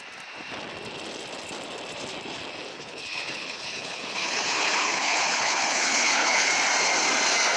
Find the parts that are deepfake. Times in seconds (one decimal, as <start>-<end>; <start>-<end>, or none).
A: 2.7-6.5